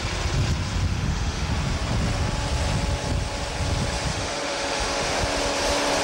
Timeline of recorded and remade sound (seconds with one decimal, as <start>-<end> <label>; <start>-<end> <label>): 0.0-0.9 recorded; 0.9-1.5 remade; 1.5-4.1 recorded; 4.1-5.2 remade; 5.2-6.0 recorded